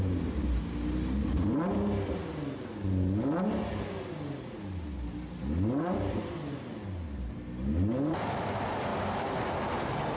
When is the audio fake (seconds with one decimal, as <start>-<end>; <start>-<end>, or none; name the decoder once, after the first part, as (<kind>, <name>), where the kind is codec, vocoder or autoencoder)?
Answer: none